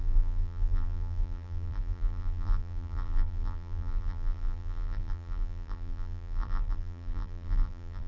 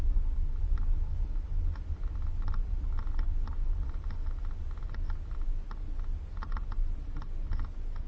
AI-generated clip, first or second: first